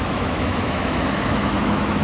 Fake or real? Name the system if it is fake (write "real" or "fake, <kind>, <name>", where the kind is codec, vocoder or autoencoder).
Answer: fake, autoencoder, DAC-VAE